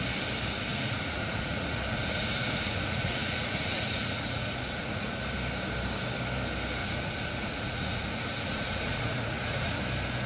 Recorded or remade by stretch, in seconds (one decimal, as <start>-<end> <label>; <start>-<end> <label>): 0.0-0.7 recorded; 0.7-5.1 remade; 5.1-6.8 recorded; 6.8-9.8 remade; 9.8-10.3 recorded